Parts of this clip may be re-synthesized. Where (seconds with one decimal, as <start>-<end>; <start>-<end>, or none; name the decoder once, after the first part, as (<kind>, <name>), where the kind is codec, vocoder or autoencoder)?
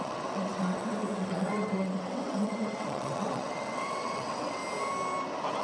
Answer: 0.0-4.6 (vocoder, WaveNeXt)